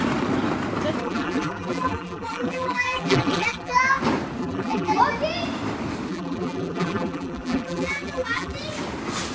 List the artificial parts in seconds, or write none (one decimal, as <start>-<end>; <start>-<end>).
1.0-4.0; 4.4-5.0; 6.1-8.6